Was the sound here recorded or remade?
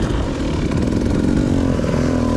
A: remade